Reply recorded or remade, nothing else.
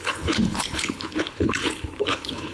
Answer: remade